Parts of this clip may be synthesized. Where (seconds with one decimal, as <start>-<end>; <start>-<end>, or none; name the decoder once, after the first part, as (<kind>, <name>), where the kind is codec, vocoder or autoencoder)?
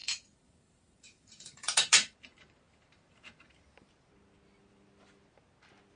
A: 0.0-3.4 (vocoder, BigVGAN v2)